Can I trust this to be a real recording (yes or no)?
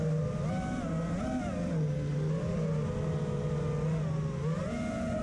yes